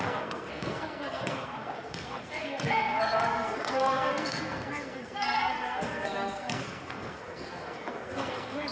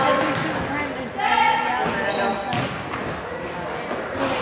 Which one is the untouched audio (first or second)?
second